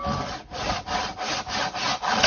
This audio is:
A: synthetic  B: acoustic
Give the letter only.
B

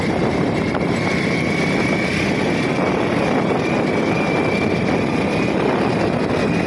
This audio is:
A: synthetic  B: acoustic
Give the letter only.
B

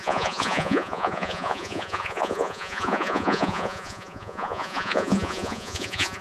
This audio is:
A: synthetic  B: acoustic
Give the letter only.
A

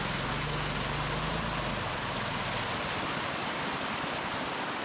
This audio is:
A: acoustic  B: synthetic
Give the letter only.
A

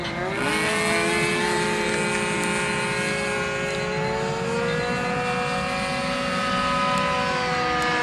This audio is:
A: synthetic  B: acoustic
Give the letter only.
B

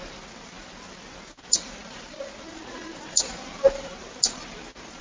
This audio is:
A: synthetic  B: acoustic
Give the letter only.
B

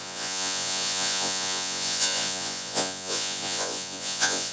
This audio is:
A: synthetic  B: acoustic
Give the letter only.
A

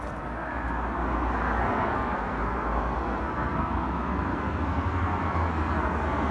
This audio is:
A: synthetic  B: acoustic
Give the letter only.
A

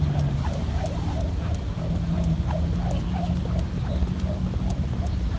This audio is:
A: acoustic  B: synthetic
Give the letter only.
A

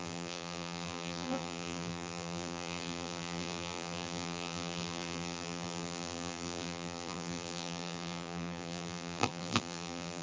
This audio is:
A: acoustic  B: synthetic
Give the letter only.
B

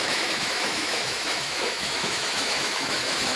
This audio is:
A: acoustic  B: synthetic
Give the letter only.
B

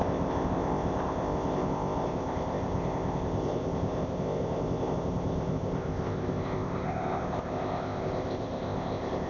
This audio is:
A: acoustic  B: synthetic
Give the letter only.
B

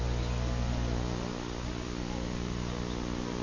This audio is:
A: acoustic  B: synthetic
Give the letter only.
A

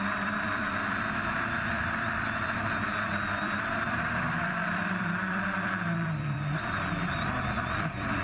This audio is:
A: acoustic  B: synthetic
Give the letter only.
B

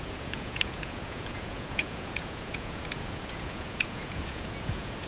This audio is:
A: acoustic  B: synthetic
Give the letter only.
B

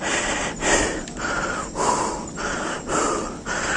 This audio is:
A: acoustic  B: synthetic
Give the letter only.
A